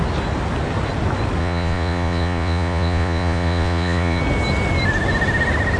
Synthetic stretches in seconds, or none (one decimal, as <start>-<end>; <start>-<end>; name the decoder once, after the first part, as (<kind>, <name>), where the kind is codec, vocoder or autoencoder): 1.4-4.2 (vocoder, Vocos)